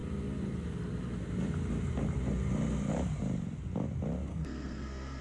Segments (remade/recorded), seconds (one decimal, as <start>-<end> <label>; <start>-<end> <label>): 0.0-4.3 recorded; 4.3-5.2 remade